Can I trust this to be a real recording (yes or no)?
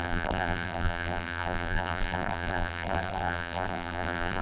no